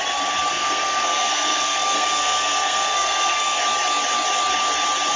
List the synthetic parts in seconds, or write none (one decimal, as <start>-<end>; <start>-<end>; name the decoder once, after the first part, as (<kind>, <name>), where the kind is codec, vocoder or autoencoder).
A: 0.5-3.6 (codec, SNAC)